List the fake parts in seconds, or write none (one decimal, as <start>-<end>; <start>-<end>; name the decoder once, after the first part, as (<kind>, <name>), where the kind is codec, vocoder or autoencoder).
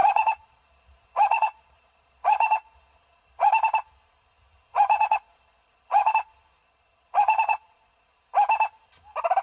0.0-3.5 (vocoder, Vocos); 4.7-6.1; 6.6-8.1